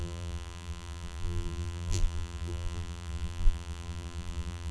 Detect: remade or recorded remade